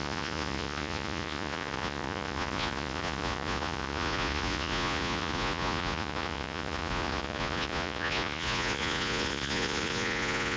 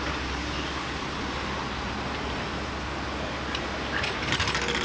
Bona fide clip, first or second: second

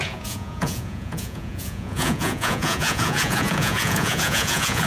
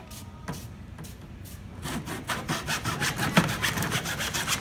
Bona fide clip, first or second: second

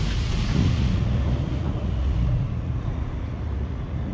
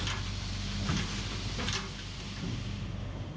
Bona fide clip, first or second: second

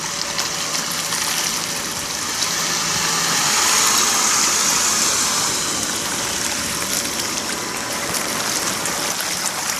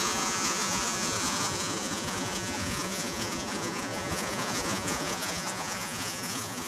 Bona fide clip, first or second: first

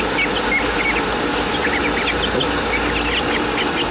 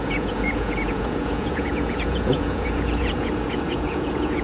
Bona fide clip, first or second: first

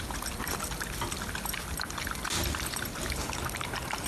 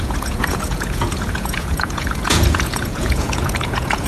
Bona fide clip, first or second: first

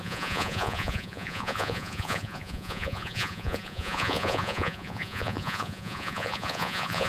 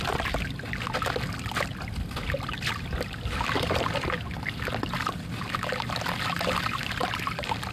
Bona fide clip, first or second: second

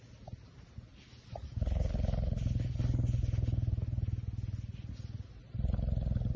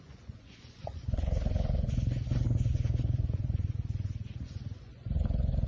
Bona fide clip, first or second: first